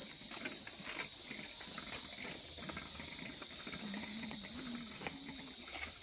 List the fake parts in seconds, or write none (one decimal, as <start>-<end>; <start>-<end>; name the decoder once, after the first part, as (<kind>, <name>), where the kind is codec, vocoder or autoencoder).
none